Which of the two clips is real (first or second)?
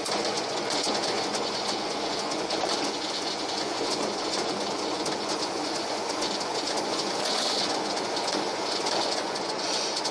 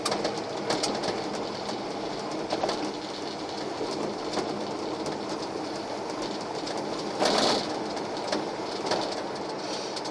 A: second